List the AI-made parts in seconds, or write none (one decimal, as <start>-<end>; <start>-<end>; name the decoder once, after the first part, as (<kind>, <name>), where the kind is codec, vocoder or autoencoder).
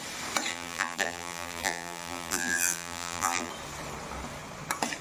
0.5-3.5 (vocoder, BigVGAN v2)